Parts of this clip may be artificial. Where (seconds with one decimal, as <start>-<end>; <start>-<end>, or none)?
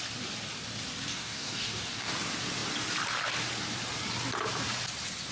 1.1-2.1